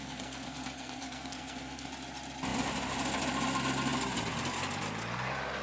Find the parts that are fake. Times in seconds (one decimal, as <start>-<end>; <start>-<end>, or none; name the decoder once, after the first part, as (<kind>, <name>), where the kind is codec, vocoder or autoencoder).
0.0-1.9 (codec, SNAC)